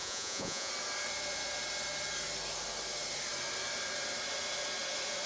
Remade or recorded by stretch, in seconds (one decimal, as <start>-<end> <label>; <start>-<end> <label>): 0.0-0.7 remade; 0.7-5.3 recorded